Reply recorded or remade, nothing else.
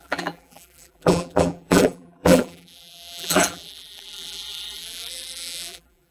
remade